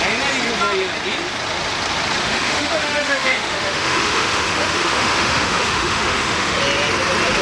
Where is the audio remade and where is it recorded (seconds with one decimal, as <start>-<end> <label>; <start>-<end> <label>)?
0.0-2.2 recorded; 2.2-6.6 remade; 6.6-7.4 recorded

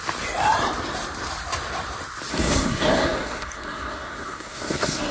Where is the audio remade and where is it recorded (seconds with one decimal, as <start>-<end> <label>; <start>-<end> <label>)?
0.0-2.3 recorded; 2.3-5.1 remade

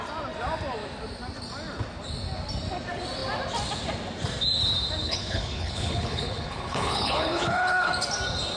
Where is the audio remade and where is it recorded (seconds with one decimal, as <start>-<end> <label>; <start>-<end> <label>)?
0.0-5.0 recorded; 5.0-7.9 remade; 7.9-8.6 recorded

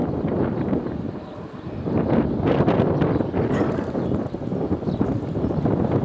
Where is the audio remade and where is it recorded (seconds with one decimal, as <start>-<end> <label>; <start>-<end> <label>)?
0.0-6.0 recorded

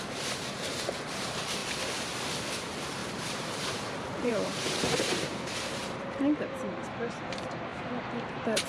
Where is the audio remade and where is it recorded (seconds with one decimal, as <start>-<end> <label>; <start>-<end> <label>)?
0.0-1.6 remade; 1.6-2.5 recorded; 2.5-8.7 remade

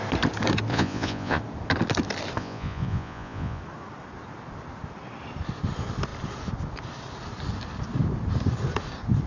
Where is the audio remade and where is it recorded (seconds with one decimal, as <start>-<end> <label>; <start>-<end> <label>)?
0.0-0.7 recorded; 0.7-1.4 remade; 1.4-2.4 recorded; 2.4-3.6 remade; 3.6-9.3 recorded

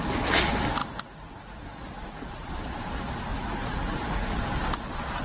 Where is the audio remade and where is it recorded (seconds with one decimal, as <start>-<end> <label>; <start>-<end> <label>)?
0.0-0.8 recorded; 0.8-2.5 remade; 2.5-3.3 recorded; 3.3-4.4 remade; 4.4-5.2 recorded

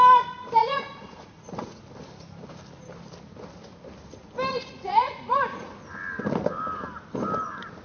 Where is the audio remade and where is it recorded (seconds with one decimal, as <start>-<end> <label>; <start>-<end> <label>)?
0.0-0.6 recorded; 0.6-1.8 remade; 1.8-4.5 recorded; 4.5-5.7 remade; 5.7-7.8 recorded